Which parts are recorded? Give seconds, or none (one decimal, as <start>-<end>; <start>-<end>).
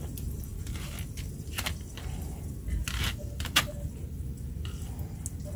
0.0-5.6